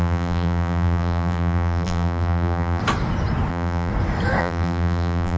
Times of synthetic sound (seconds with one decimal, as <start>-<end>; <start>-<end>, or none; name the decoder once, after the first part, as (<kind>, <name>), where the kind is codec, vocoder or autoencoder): 0.0-2.8 (vocoder, BigVGAN v2); 3.5-3.9; 4.4-5.4

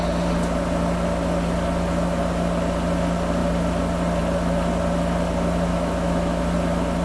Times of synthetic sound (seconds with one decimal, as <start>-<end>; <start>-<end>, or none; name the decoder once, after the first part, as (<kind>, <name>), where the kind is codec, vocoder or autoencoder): 5.7-6.4 (autoencoder, DAC-VAE)

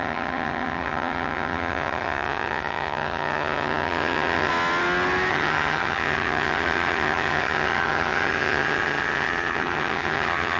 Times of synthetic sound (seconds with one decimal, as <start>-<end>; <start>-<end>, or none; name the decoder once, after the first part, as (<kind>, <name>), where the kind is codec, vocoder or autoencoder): 0.0-4.5 (vocoder, HiFi-GAN); 5.3-10.6

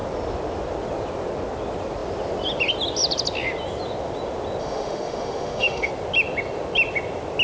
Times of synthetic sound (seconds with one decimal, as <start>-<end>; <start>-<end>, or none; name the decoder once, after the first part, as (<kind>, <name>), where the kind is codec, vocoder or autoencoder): 4.6-5.9 (autoencoder, DAC-VAE)

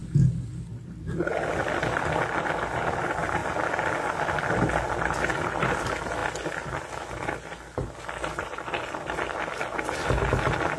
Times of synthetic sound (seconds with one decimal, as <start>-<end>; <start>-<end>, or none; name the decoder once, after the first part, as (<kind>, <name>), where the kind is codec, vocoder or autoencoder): none

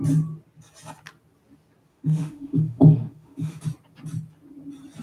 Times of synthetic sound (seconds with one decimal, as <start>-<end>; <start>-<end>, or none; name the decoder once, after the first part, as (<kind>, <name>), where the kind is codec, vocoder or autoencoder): 1.9-3.6 (autoencoder, DAC-VAE)

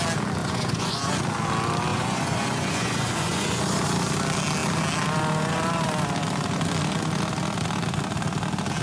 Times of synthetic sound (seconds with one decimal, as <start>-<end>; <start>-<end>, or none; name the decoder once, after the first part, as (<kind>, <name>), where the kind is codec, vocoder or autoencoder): 0.4-1.1 (vocoder, Vocos); 1.9-3.6

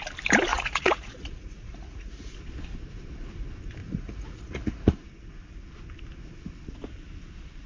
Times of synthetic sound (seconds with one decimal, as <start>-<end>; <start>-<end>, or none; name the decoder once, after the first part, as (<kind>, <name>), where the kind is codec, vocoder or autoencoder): 0.5-2.3 (vocoder, Vocos); 3.8-5.1